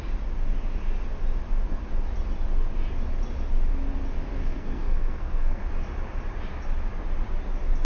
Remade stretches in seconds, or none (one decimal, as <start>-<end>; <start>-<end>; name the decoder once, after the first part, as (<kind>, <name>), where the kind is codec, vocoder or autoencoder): 4.4-5.6 (codec, SNAC)

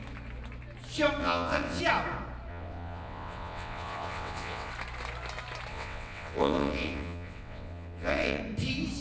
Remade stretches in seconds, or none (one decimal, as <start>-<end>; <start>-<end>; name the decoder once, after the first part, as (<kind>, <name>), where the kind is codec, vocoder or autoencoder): 1.2-1.8 (vocoder, WaveNeXt); 2.5-4.7; 5.7-8.4

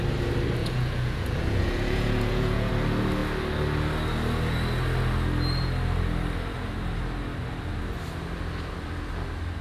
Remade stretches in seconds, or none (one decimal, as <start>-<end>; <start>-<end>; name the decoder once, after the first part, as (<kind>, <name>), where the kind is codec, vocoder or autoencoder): 0.6-2.7 (vocoder, Vocos)

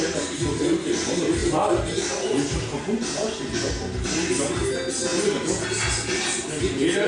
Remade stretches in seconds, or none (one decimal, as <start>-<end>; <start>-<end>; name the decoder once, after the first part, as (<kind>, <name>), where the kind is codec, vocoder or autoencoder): none

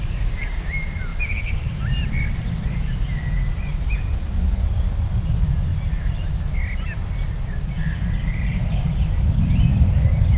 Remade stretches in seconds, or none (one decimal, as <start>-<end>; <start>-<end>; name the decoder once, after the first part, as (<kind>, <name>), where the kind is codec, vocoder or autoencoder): none

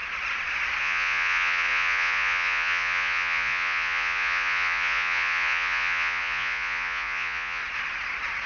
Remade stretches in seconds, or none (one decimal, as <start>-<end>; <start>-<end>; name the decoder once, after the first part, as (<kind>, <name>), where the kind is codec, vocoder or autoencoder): 0.8-7.6 (vocoder, Vocos)

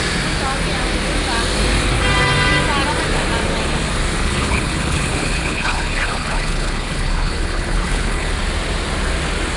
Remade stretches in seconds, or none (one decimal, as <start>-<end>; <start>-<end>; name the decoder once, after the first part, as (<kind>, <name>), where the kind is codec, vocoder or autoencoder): 4.2-8.3 (codec, HILCodec)